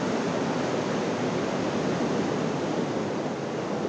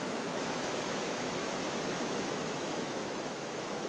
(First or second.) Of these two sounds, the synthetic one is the second